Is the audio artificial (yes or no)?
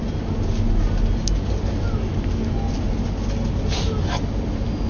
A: no